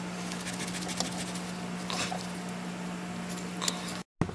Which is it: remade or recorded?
recorded